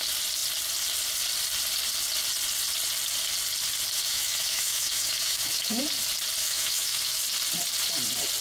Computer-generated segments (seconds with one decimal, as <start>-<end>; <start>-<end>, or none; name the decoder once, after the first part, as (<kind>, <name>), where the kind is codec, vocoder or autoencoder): 4.0-5.8 (autoencoder, DAC-VAE); 6.4-7.2